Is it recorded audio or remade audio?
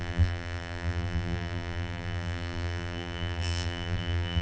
remade